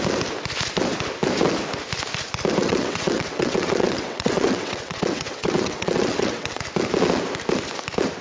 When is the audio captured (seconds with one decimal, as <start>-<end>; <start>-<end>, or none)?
0.0-2.6; 6.6-8.2